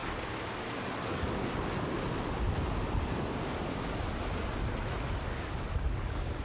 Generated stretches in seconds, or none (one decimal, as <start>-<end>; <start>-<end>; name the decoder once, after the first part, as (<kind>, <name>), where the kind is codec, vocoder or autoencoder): none